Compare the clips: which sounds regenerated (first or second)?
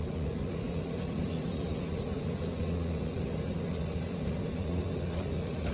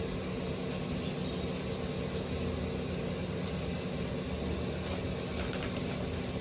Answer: first